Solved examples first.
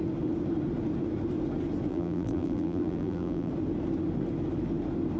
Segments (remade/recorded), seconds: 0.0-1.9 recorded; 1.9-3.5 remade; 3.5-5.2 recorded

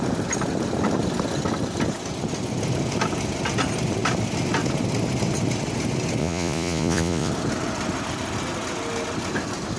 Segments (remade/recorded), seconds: 0.0-6.2 recorded; 6.2-7.3 remade; 7.3-9.8 recorded

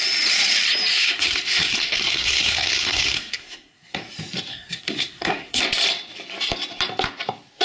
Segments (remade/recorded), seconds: 0.0-0.9 recorded; 0.9-4.0 remade; 4.0-4.5 recorded; 4.5-5.6 remade; 5.6-7.6 recorded

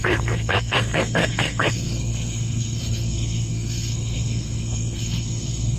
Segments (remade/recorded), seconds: 0.0-5.8 remade

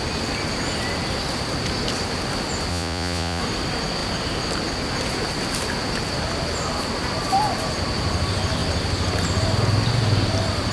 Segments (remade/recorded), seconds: 0.0-2.7 recorded; 2.7-3.4 remade; 3.4-10.7 recorded

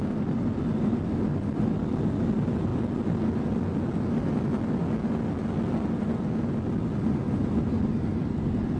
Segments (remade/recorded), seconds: 0.0-8.8 recorded